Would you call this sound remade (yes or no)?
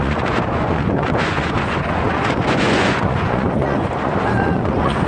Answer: yes